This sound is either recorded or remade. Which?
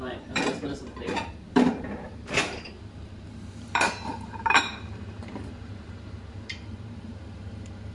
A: remade